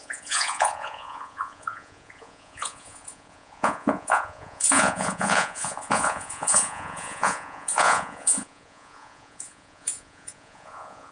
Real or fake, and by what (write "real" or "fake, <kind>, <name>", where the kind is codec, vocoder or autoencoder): fake, vocoder, Vocos